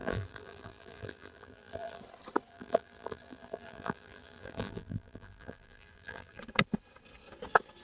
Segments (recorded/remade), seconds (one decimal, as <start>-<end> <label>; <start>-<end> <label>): 0.0-2.0 remade; 2.0-2.5 recorded; 2.5-6.4 remade; 6.4-7.8 recorded